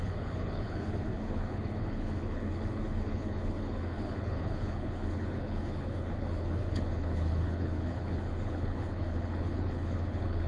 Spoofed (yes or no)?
yes